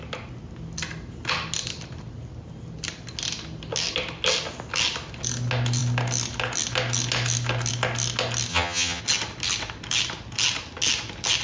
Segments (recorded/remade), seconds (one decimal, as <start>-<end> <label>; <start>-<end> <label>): 0.0-8.5 recorded; 8.5-9.0 remade; 9.0-11.4 recorded